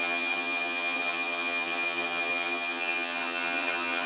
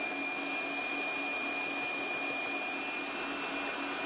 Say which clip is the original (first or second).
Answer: second